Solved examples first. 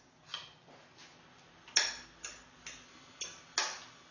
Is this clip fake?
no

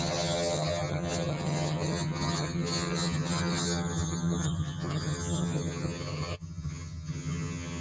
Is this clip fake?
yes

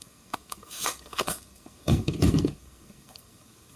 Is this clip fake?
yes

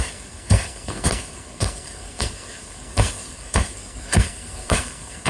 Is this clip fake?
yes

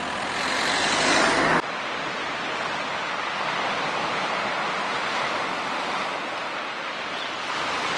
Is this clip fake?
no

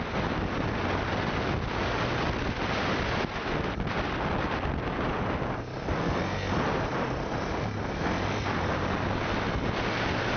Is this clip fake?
no